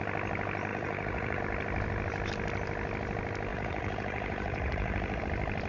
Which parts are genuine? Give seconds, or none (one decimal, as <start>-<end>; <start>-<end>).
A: 0.0-0.7; 1.4-3.5; 5.2-5.7